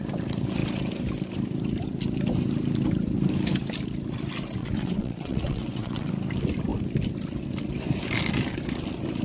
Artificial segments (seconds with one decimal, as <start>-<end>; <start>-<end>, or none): 4.6-6.1